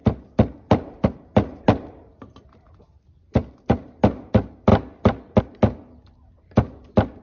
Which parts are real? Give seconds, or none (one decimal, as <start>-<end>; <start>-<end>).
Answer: 0.0-7.2